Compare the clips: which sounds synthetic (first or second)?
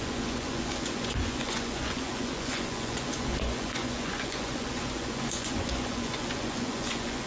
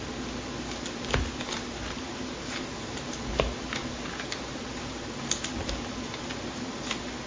first